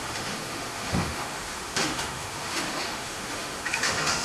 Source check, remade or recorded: remade